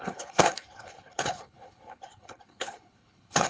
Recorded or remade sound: remade